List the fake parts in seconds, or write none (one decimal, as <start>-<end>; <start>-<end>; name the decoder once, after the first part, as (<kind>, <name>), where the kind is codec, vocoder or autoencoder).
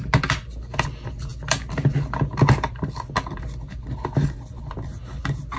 none